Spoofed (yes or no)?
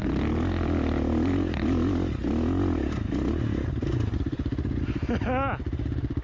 no